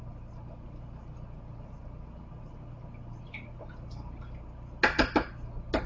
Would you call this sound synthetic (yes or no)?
no